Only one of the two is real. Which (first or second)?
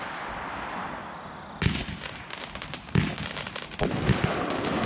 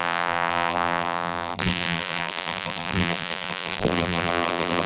first